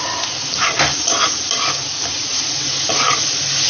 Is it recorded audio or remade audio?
recorded